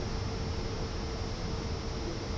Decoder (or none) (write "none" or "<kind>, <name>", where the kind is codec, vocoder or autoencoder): none